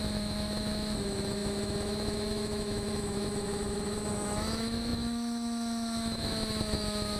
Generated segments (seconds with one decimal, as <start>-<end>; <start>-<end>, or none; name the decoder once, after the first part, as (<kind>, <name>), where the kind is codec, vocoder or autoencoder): 0.0-7.2 (autoencoder, DAC-VAE)